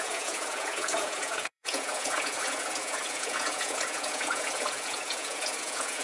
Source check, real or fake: fake